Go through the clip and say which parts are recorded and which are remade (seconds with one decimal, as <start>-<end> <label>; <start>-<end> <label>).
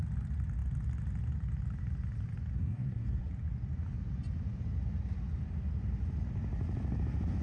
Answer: 0.0-2.5 recorded; 2.5-3.3 remade; 3.3-7.4 recorded